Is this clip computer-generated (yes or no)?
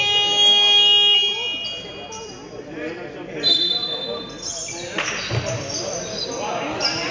no